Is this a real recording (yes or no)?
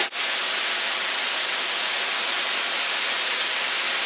yes